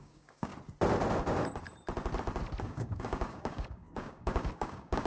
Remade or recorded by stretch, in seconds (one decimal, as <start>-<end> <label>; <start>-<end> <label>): 0.0-0.5 remade; 0.5-2.6 recorded; 2.6-5.1 remade